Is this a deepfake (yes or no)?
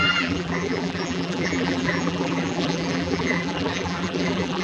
yes